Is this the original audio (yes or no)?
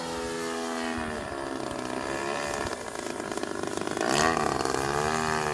yes